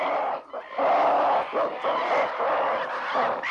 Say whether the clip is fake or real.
real